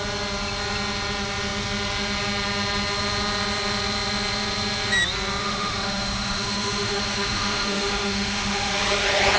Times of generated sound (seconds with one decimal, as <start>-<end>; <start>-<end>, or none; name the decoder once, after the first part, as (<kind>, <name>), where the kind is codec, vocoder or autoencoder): 5.4-8.7 (autoencoder, DAC-VAE)